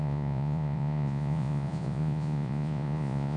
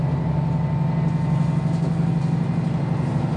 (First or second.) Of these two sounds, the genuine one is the second